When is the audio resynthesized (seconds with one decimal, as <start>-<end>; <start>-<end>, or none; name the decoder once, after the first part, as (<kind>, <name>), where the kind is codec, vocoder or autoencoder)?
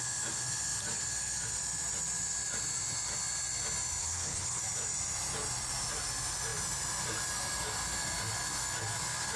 4.0-4.6 (codec, HILCodec)